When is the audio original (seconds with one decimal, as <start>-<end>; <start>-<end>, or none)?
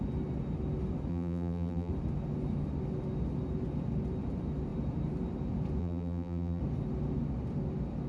0.0-1.1; 1.9-5.8; 6.6-8.1